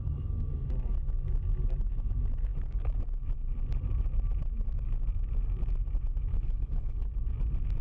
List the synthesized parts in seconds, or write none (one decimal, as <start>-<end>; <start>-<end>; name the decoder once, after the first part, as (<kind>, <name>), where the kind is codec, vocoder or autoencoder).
6.3-7.1 (codec, HILCodec)